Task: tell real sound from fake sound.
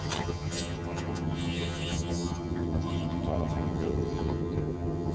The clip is fake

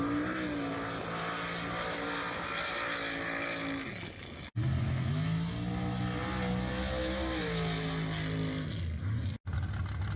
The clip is real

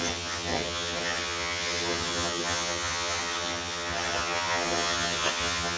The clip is fake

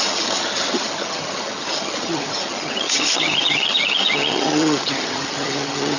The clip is fake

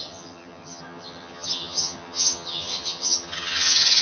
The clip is fake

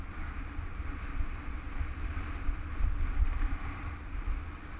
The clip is real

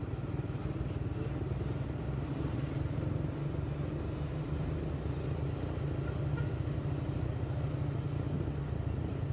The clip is real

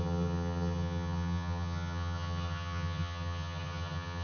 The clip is fake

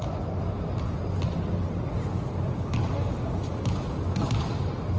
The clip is real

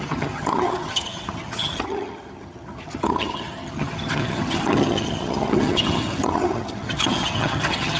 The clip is fake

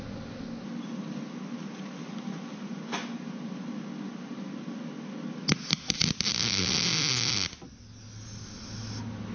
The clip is real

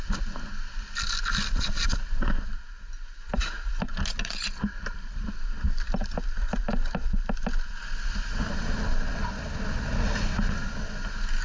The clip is real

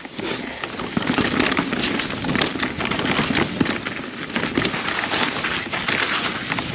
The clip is real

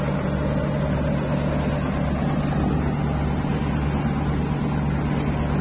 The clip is real